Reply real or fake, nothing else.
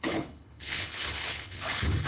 fake